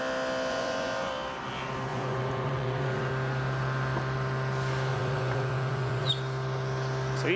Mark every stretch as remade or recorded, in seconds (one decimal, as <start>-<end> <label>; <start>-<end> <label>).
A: 0.0-0.5 recorded; 0.5-1.1 remade; 1.1-1.9 recorded; 1.9-3.1 remade; 3.1-4.9 recorded; 4.9-6.1 remade; 6.1-7.4 recorded